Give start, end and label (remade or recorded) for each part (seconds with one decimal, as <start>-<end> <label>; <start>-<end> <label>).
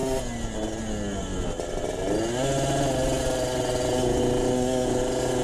0.0-5.4 recorded